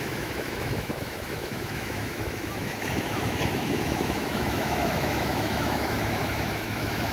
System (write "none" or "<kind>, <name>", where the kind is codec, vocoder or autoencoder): autoencoder, DAC-VAE